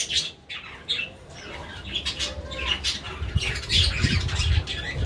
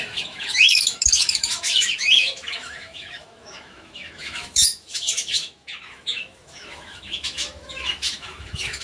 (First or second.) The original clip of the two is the first